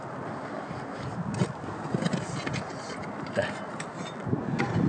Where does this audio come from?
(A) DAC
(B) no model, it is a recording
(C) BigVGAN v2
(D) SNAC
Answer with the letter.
B